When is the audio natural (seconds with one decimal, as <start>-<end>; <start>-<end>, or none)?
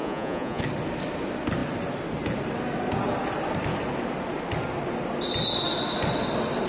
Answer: 0.6-6.7